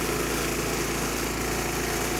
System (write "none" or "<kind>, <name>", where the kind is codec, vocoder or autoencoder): none